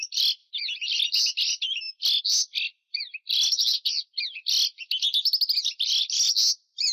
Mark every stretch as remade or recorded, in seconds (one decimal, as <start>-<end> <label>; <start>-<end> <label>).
0.0-6.9 recorded